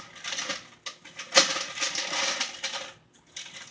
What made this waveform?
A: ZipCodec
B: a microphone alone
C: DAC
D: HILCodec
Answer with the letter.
B